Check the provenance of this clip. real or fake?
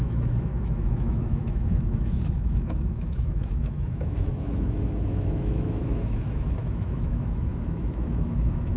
fake